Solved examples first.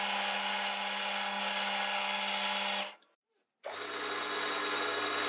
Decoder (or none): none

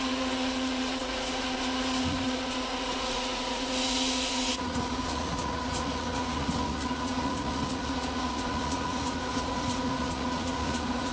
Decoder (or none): vocoder, Vocos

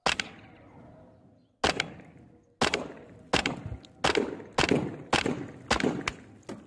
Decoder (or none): none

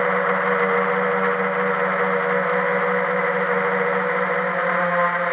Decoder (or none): none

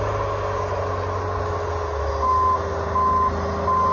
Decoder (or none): none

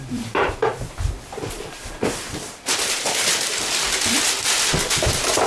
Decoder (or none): vocoder, BigVGAN v2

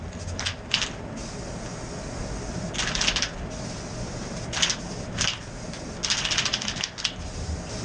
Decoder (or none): none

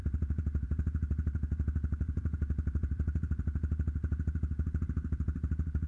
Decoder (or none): vocoder, BigVGAN v2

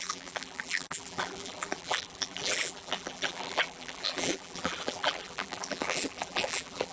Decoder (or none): vocoder, BigVGAN v2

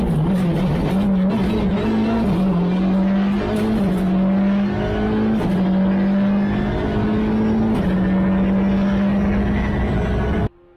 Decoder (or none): none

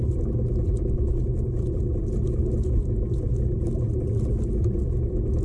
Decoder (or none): none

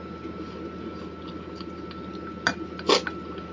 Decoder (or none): none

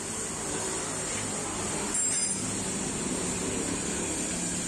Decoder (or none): none